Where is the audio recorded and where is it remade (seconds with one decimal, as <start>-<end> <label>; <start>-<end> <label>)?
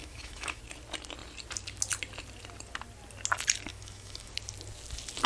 0.0-0.6 remade; 0.6-3.7 recorded; 3.7-4.3 remade; 4.3-5.3 recorded